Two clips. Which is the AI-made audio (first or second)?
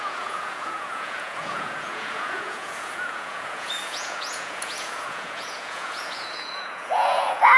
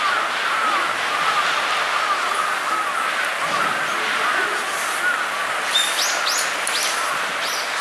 first